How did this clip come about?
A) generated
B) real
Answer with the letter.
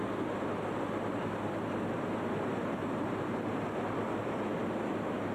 B